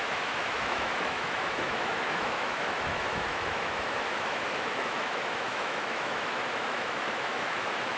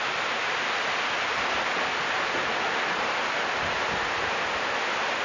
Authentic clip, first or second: second